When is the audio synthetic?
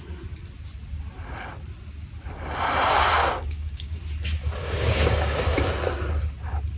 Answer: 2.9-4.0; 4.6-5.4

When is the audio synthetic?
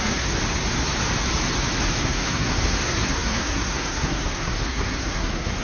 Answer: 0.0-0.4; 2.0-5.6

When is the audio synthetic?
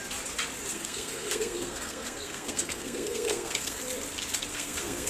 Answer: 0.7-3.8; 4.5-5.1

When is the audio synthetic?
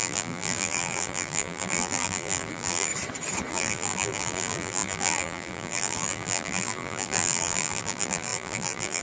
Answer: 0.0-2.9; 3.5-9.0